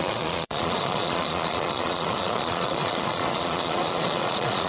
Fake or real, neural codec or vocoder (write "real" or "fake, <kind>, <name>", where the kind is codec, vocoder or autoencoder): fake, vocoder, Vocos